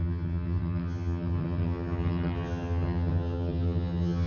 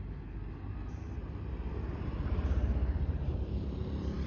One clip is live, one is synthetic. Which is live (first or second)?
second